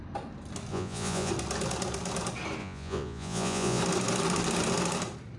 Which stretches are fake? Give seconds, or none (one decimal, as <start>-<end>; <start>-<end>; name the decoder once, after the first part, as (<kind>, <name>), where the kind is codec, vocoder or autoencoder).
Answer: 0.7-1.3 (vocoder, Vocos); 2.6-3.8